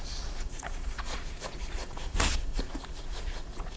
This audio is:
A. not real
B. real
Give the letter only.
A